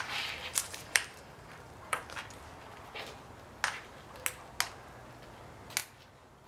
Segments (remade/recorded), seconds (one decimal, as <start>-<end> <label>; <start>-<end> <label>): 0.0-0.5 recorded; 0.5-2.0 remade; 2.0-6.5 recorded